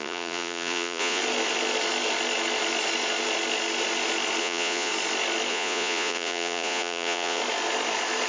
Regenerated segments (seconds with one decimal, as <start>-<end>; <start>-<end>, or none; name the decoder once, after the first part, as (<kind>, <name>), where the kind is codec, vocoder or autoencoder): 0.0-1.2 (vocoder, Vocos); 4.4-4.9; 5.5-7.4